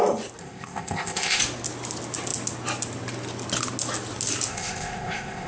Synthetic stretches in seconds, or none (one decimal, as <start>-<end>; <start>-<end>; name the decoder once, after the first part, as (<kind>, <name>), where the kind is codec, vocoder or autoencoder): 0.4-1.4 (codec, ZipCodec); 4.5-5.5